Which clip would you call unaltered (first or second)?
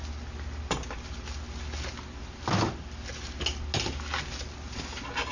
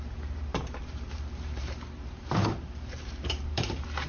first